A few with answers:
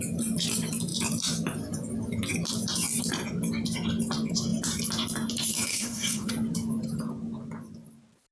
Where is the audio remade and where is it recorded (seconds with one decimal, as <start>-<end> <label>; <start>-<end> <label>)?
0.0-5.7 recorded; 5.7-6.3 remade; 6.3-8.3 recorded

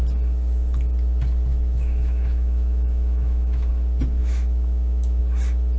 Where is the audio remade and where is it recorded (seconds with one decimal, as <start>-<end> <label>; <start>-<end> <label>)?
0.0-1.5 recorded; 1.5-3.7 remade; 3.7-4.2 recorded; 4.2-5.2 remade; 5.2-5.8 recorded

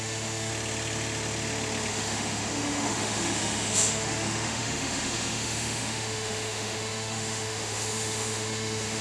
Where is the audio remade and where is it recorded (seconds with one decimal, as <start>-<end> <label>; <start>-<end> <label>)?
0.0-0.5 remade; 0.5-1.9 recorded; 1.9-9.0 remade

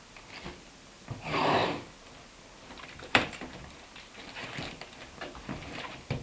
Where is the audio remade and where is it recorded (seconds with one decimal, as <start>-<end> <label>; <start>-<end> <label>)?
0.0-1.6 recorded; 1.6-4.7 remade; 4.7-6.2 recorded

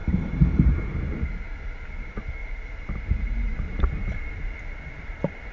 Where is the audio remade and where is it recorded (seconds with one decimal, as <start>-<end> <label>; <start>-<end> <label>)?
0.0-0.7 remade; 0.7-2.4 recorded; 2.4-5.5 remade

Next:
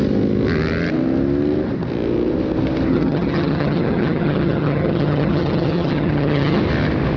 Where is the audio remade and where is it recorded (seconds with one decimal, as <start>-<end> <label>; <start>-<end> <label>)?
0.0-2.9 recorded; 2.9-6.6 remade; 6.6-7.2 recorded

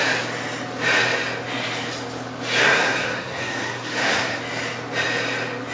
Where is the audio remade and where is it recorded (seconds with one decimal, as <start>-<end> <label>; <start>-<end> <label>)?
0.0-2.6 recorded; 2.6-4.4 remade; 4.4-5.7 recorded

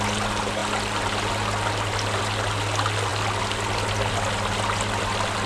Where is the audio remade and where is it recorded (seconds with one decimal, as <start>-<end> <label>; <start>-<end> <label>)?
0.0-5.5 recorded